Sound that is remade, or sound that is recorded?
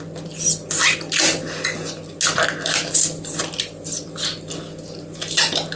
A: recorded